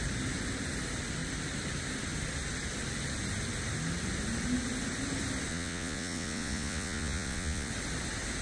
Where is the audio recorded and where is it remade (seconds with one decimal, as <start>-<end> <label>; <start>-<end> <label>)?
0.0-5.5 recorded; 5.5-7.7 remade; 7.7-8.4 recorded